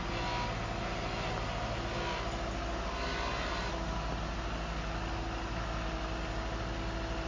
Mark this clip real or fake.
real